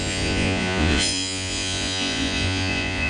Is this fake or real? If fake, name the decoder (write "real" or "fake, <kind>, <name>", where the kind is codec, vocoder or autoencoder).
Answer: fake, vocoder, Vocos